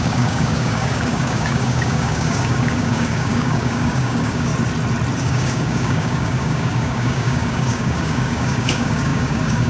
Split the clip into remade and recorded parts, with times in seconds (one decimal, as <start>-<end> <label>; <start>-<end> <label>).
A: 0.0-4.5 remade; 4.5-5.2 recorded; 5.2-9.7 remade